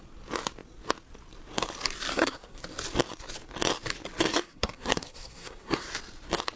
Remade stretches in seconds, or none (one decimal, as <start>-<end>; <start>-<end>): 2.1-2.6; 4.3-5.9